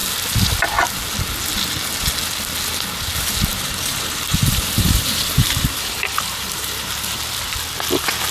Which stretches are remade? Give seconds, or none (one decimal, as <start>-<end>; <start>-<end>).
3.5-7.2